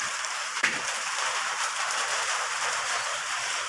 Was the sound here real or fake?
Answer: fake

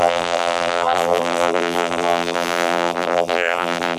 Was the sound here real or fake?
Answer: fake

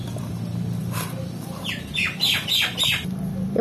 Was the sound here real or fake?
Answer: fake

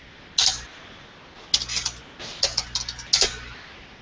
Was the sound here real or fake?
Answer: real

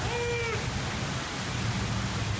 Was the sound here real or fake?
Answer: real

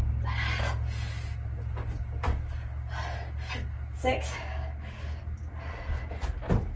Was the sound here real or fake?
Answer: real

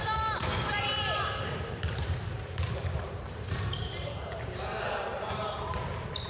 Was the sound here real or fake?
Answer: fake